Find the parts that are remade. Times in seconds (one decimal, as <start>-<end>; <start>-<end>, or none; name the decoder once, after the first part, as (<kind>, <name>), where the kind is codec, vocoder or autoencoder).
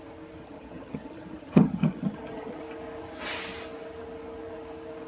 0.4-2.6 (vocoder, HiFi-GAN)